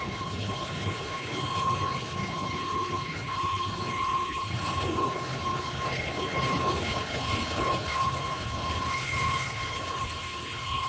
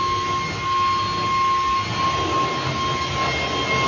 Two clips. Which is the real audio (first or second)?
second